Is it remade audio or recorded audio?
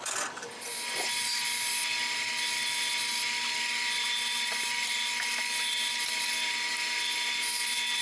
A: remade